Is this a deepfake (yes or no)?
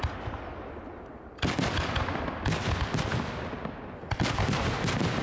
no